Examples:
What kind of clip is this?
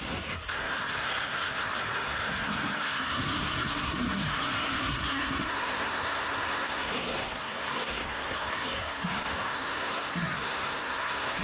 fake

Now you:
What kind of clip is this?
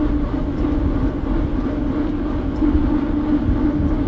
real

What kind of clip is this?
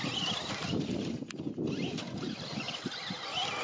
real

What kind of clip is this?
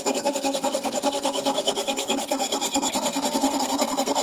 fake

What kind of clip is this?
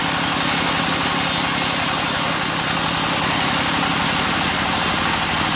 real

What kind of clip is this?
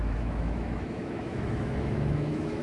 fake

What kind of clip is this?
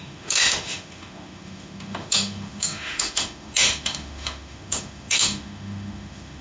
fake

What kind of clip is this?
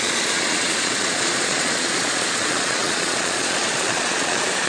fake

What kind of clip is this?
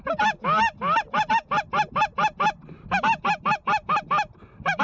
real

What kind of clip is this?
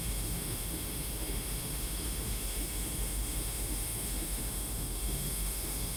fake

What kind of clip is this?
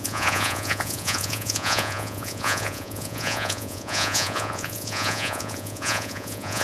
fake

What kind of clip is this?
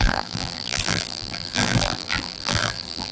fake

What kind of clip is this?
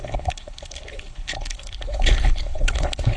fake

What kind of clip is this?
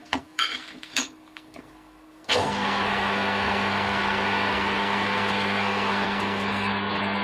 fake